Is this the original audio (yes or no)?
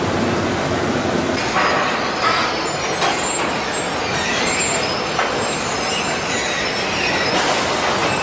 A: yes